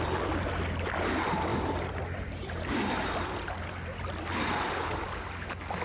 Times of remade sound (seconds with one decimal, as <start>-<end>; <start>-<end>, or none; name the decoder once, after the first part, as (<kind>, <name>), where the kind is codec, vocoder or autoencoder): none